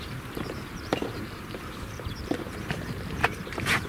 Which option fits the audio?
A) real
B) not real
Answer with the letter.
B